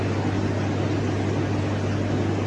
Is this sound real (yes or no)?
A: yes